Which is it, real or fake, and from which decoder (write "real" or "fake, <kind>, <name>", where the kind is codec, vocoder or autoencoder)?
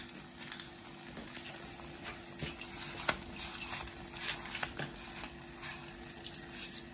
real